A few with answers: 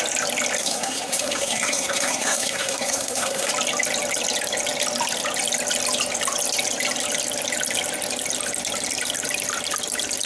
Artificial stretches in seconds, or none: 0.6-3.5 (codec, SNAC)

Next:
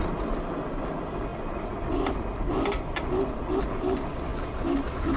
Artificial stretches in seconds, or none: none

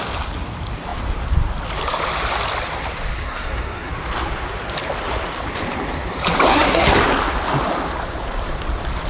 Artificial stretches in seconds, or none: 3.2-3.9 (codec, SNAC); 6.5-7.0

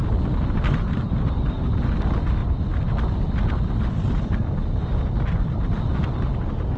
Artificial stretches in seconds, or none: none

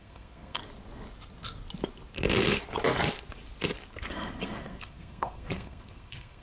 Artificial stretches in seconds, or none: 0.0-0.6 (codec, SNAC); 4.1-6.4